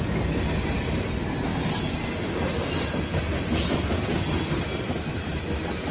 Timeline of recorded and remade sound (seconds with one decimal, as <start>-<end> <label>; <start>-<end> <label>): 0.0-5.9 recorded